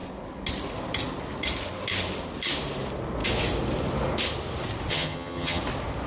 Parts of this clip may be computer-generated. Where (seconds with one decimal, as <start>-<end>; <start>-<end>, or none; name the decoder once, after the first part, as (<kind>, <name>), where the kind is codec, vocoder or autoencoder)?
4.9-5.6 (vocoder, HiFi-GAN)